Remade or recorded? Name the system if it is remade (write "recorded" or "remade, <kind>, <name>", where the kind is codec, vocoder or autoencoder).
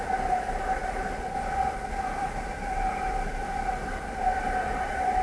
recorded